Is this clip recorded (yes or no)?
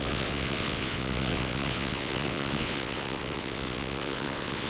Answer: no